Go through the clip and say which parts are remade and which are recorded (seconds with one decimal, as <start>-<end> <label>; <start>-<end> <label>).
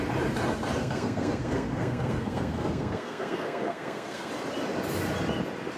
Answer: 0.0-0.8 recorded; 0.8-4.3 remade; 4.3-5.8 recorded